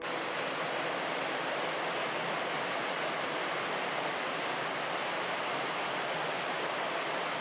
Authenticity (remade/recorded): recorded